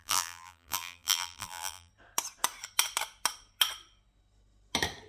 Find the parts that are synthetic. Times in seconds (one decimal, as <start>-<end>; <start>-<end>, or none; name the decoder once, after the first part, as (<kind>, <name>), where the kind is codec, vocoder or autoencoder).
0.0-1.9 (vocoder, BigVGAN v2)